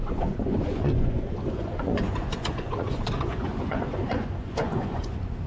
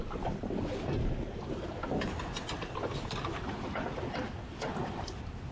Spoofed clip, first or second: first